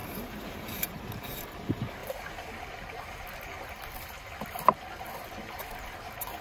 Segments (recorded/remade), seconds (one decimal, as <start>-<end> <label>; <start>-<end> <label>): 0.0-1.1 remade; 1.1-6.4 recorded